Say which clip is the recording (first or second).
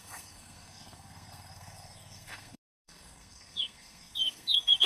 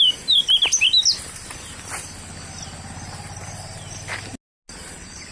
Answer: second